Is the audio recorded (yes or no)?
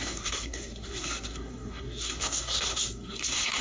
no